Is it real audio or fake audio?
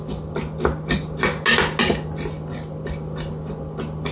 real